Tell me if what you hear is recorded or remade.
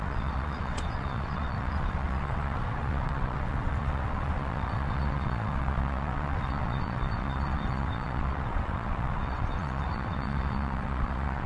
remade